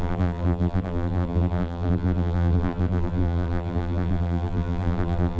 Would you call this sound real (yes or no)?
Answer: no